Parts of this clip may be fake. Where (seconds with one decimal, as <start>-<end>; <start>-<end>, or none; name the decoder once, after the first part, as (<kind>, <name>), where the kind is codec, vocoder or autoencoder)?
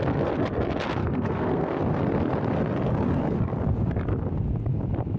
1.0-1.8 (codec, SNAC)